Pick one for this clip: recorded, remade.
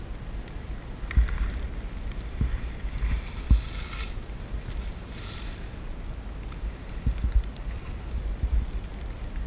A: recorded